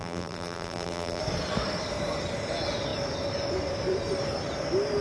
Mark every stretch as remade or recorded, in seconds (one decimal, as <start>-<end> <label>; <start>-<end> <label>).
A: 0.0-1.2 remade; 1.2-5.0 recorded